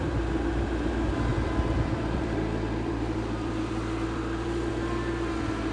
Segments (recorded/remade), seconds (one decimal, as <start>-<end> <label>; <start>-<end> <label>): 0.0-1.3 recorded; 1.3-4.7 remade; 4.7-5.7 recorded